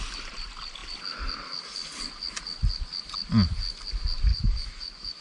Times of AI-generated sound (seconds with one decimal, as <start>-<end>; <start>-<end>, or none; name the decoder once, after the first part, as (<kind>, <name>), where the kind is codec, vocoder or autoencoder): 4.3-5.2 (autoencoder, DAC-VAE)